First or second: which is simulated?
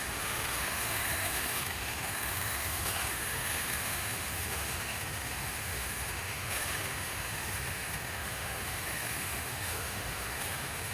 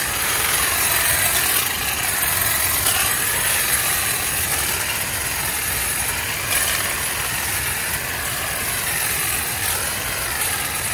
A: first